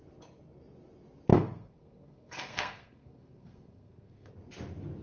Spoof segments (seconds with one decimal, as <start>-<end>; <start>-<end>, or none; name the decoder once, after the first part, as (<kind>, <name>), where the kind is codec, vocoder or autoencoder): 1.3-4.3 (codec, SNAC)